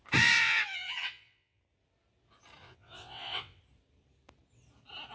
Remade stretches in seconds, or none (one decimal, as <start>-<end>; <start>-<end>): 0.4-1.6; 2.6-3.6